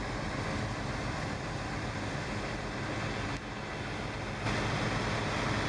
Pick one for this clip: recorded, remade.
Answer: recorded